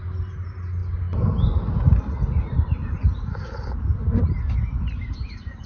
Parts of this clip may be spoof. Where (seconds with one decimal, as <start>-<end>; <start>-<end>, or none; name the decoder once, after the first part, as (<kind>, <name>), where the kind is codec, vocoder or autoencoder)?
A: none